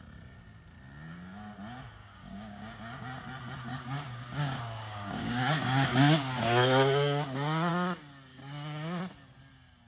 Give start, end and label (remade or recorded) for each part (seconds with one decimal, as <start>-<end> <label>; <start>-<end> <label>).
0.0-2.0 recorded; 2.0-2.8 remade; 2.8-3.7 recorded; 3.7-7.7 remade; 7.7-8.3 recorded; 8.3-9.0 remade; 9.0-9.9 recorded